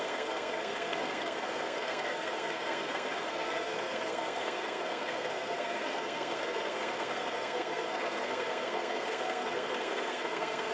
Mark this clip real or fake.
fake